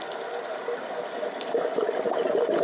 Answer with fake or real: real